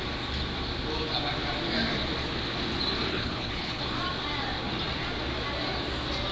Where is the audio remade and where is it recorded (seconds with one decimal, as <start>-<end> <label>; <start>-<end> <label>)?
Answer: 0.0-3.1 recorded; 3.1-3.8 remade; 3.8-6.3 recorded